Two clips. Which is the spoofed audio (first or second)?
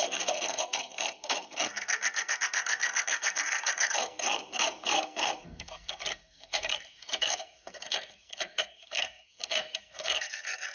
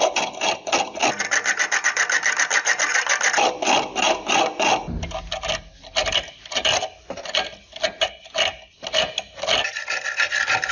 first